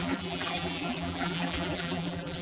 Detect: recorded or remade remade